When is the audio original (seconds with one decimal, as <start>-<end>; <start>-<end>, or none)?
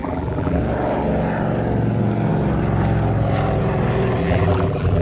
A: 0.6-4.2